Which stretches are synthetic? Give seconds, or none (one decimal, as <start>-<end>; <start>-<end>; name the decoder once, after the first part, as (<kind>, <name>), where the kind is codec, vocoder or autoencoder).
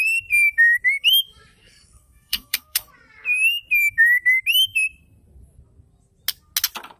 1.6-2.9 (codec, SNAC)